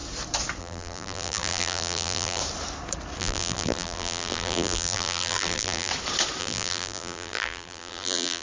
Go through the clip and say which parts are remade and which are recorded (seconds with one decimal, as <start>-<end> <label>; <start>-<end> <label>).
0.0-0.6 recorded; 0.6-2.4 remade; 2.4-3.2 recorded; 3.2-5.9 remade; 5.9-6.4 recorded; 6.4-8.4 remade